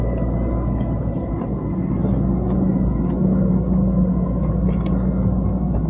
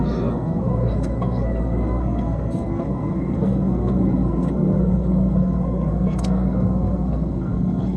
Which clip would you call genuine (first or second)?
first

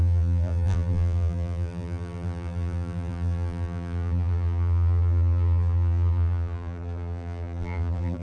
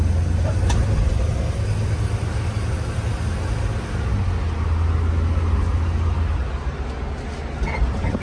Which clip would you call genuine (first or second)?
second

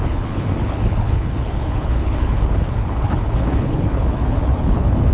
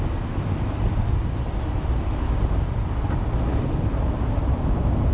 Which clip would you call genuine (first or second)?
second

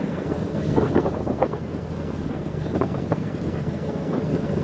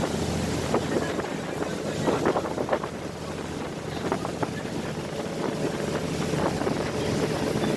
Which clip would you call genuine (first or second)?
second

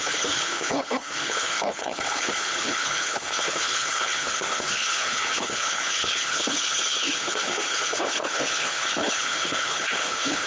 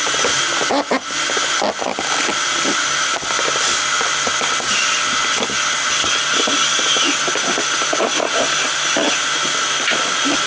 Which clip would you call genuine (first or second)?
second